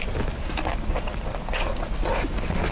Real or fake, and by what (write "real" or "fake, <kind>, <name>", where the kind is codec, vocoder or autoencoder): real